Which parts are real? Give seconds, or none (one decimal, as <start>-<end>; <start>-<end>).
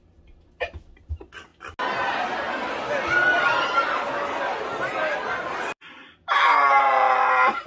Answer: 0.0-7.7